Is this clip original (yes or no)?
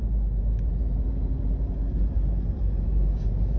yes